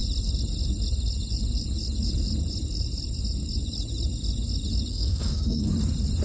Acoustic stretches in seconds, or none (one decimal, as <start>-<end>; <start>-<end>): 0.0-4.9; 5.7-6.2